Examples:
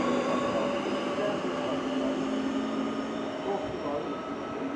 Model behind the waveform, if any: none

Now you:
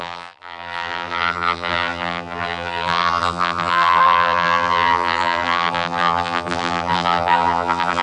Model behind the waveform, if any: vocoder, BigVGAN v2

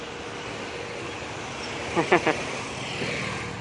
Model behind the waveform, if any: vocoder, BigVGAN v2